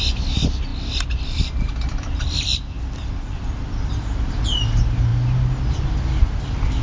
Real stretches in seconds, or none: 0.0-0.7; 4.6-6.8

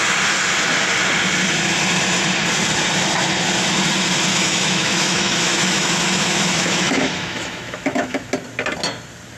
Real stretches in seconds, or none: 0.0-4.3; 8.3-9.4

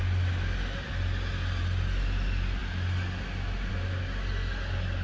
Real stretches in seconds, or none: 0.0-5.0

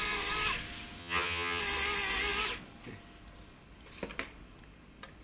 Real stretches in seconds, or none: 0.0-1.0; 1.6-5.2

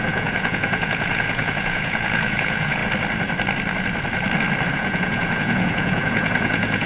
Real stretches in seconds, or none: 2.8-4.7

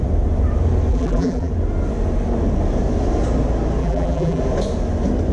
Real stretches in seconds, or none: 0.0-0.9; 1.5-3.8; 4.4-5.3

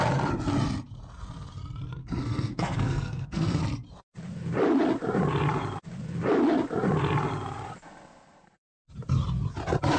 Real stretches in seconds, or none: 0.0-2.0; 3.6-10.0

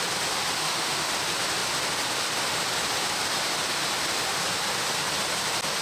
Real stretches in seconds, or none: 0.0-0.6; 1.1-5.8